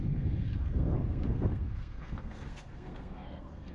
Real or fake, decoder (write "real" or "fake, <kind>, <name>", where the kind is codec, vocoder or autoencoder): fake, codec, SNAC